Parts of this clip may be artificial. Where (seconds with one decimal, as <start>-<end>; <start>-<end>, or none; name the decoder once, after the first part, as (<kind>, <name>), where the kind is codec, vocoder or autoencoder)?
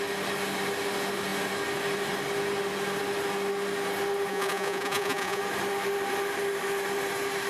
4.3-5.4 (vocoder, Vocos)